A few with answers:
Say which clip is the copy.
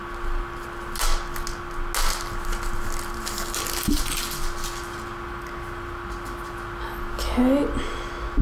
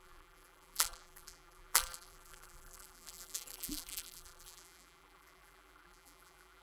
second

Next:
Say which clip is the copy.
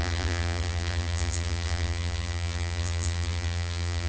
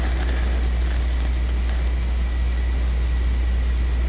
first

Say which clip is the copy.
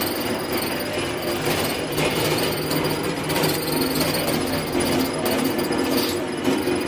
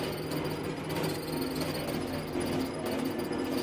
first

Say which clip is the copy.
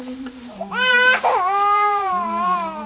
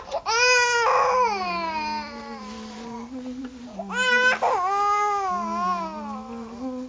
first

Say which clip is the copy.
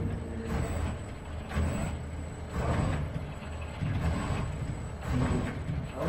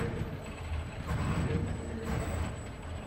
second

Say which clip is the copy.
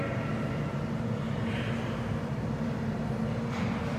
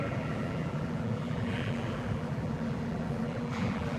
second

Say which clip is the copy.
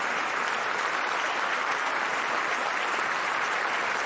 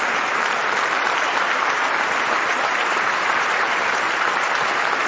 second